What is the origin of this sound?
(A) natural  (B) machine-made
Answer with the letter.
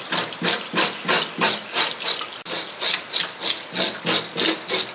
A